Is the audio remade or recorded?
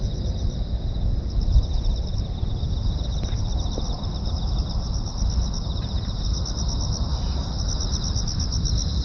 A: recorded